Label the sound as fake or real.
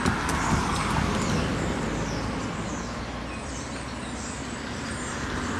real